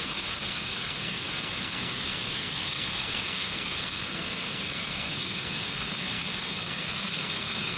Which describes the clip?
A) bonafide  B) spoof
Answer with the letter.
B